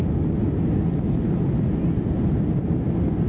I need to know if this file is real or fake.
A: real